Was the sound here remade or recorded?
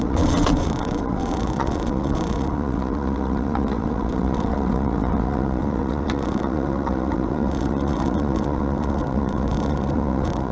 remade